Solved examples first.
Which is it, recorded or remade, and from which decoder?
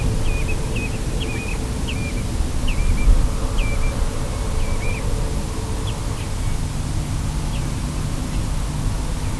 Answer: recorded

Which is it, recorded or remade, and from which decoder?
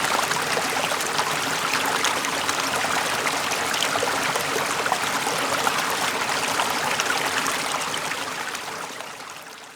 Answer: recorded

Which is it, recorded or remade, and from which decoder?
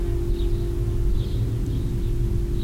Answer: recorded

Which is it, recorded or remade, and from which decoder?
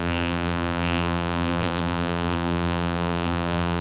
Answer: remade, vocoder, BigVGAN v2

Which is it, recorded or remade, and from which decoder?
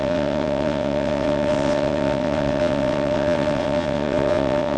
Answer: remade, vocoder, WaveNeXt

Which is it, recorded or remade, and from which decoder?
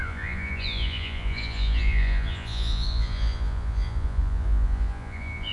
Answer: remade, vocoder, Vocos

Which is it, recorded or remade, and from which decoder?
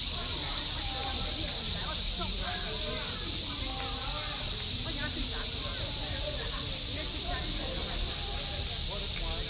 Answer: recorded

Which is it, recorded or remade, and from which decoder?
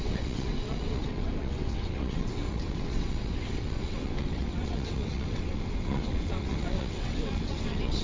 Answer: remade, vocoder, WaveNeXt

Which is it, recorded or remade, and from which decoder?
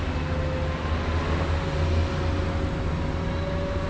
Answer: recorded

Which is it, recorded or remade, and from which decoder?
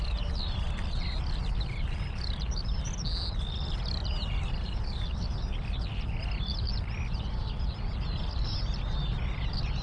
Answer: recorded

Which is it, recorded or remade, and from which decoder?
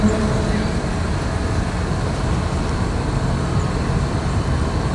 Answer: recorded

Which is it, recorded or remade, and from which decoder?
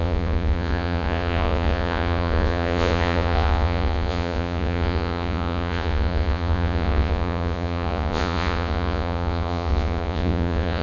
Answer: remade, vocoder, Vocos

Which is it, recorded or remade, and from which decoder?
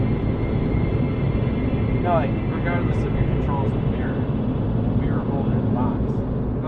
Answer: recorded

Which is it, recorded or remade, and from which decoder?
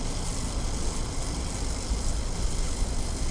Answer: recorded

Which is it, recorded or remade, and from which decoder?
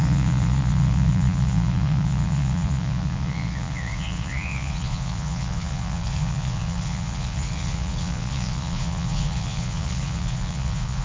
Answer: remade, vocoder, Vocos